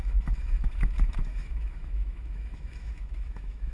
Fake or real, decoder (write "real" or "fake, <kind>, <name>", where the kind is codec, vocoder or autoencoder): fake, autoencoder, DAC-VAE